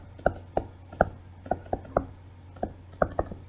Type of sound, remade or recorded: recorded